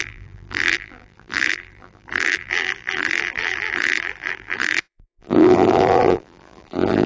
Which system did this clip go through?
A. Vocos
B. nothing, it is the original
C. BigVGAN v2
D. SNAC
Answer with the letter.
C